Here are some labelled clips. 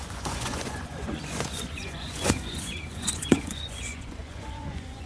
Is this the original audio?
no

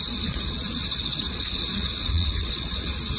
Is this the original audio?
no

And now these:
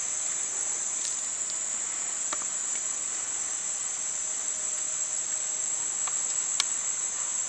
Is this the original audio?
yes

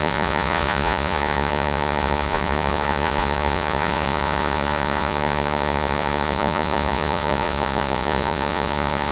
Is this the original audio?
no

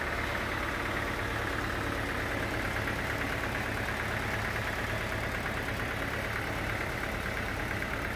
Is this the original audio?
yes